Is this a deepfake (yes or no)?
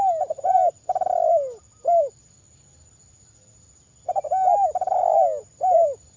no